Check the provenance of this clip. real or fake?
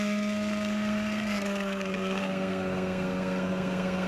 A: fake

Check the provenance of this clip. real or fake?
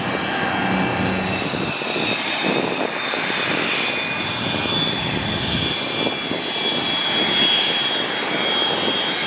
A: real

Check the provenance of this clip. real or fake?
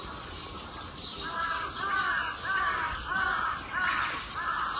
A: real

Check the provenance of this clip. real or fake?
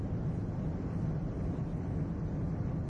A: real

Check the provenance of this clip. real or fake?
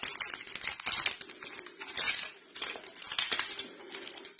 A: real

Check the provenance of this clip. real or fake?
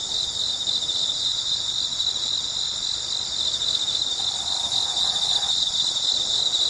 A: real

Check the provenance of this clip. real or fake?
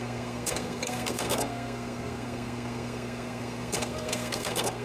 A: fake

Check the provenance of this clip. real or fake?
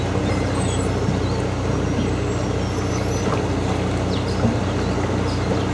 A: real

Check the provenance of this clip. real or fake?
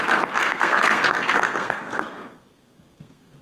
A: fake